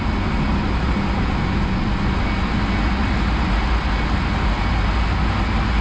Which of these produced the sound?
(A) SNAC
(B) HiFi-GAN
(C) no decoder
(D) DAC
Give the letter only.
C